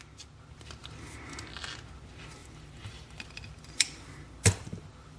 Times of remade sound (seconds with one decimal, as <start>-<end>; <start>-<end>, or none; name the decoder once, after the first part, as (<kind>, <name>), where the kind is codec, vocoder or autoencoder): 2.4-5.2 (vocoder, BigVGAN v2)